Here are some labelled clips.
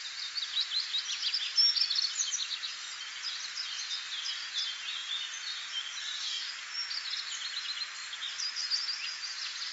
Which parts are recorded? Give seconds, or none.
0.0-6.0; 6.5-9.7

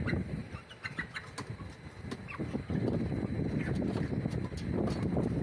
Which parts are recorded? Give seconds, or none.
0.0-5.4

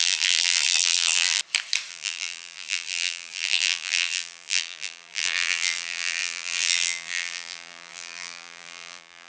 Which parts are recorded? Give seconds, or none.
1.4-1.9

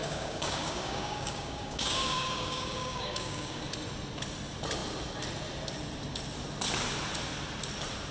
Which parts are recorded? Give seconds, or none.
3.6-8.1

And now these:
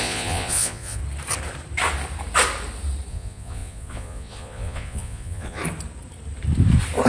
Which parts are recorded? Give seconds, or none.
1.0-3.1; 5.6-7.1

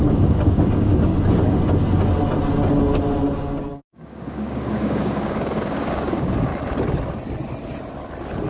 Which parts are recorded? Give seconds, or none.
1.1-3.7; 6.5-8.5

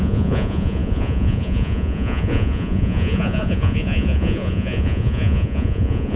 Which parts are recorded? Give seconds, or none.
none

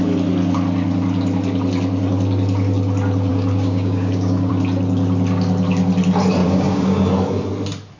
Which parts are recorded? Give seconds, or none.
0.0-3.3; 4.5-6.4; 7.0-8.0